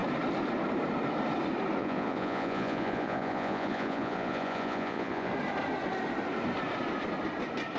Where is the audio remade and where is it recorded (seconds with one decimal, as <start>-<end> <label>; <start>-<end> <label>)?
0.0-1.8 recorded; 1.8-5.3 remade; 5.3-7.8 recorded